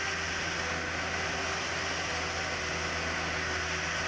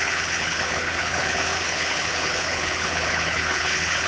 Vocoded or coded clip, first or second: second